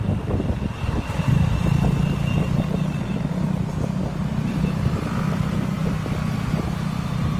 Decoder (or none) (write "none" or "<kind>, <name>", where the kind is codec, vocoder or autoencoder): none